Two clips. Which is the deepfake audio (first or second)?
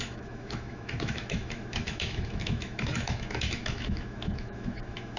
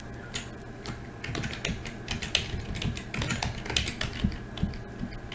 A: first